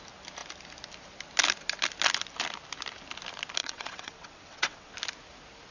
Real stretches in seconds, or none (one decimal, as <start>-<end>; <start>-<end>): 0.0-3.6; 4.9-5.7